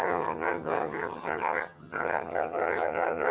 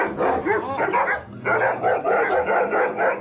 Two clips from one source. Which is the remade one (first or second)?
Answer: first